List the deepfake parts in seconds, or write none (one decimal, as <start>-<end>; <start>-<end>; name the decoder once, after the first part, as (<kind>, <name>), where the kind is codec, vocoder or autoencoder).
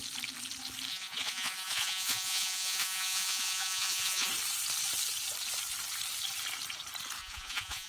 0.9-4.3 (vocoder, Vocos); 7.2-7.9